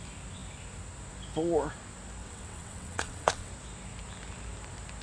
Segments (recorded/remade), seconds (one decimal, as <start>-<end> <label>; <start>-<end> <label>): 0.0-2.2 recorded; 2.2-3.5 remade; 3.5-5.0 recorded